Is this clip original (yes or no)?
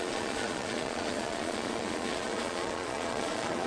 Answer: no